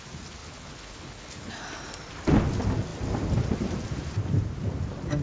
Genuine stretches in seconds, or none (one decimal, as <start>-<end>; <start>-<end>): 0.0-0.4; 1.5-5.2